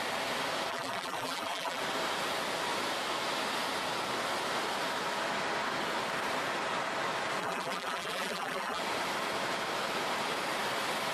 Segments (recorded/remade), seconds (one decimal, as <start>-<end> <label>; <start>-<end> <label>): 0.0-0.7 recorded; 0.7-1.8 remade; 1.8-7.4 recorded; 7.4-8.8 remade; 8.8-11.1 recorded